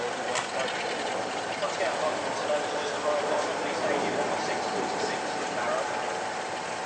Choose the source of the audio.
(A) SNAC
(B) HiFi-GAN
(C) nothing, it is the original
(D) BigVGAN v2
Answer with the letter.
C